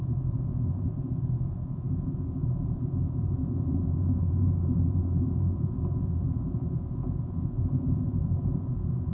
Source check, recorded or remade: remade